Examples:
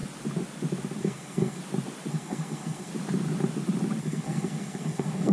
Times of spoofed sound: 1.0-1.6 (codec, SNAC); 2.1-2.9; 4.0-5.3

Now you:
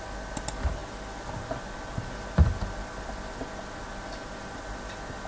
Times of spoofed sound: none

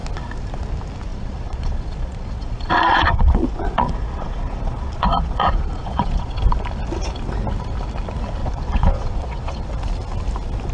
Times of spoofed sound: 1.1-6.4 (vocoder, Vocos); 8.4-9.6

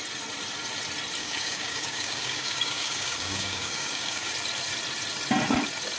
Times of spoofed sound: 1.2-4.3 (codec, DAC)

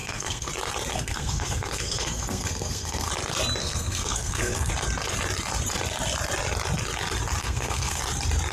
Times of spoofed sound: 0.0-0.5 (codec, SNAC); 0.9-3.1; 3.6-4.7; 7.4-8.0

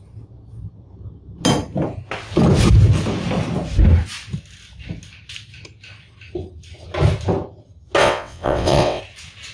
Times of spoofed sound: 8.0-9.0 (vocoder, WaveNeXt)